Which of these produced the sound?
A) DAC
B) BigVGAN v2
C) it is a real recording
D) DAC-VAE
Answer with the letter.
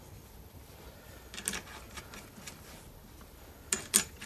C